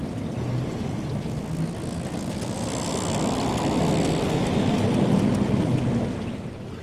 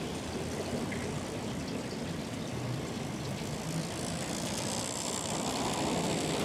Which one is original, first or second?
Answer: first